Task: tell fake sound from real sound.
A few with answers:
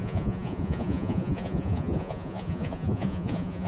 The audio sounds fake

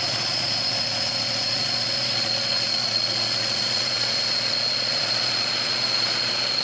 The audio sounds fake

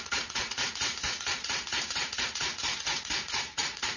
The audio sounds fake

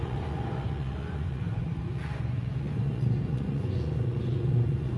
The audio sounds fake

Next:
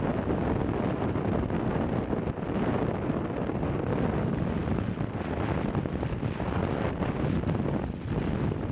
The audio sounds real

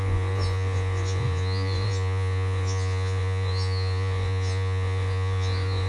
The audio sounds fake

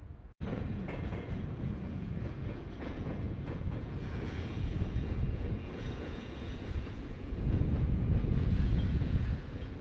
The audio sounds fake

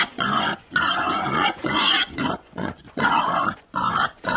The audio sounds fake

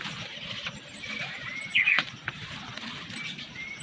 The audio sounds real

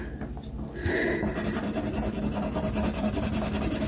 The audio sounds real